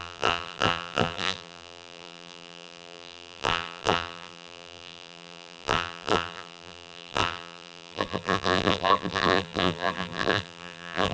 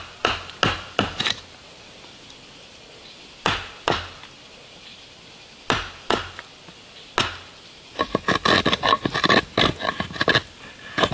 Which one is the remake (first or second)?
first